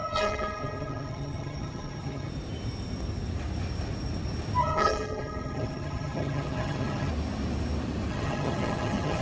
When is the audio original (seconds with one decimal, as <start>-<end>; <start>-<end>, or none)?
2.3-4.6; 7.1-8.1